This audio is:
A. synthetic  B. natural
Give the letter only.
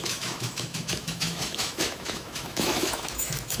A